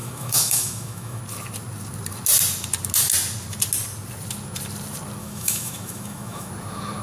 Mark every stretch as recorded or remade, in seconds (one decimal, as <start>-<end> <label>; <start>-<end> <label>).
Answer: 0.0-1.2 remade; 1.2-5.2 recorded; 5.2-6.5 remade; 6.5-7.0 recorded